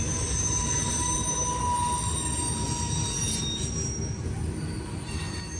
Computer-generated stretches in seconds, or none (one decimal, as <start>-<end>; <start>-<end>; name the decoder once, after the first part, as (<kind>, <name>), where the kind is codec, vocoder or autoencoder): none